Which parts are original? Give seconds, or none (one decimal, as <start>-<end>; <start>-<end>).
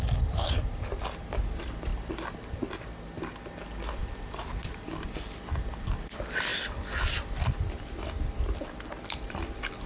0.0-9.9